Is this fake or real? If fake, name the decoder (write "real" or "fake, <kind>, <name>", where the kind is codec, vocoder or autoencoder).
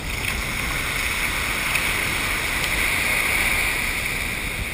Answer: real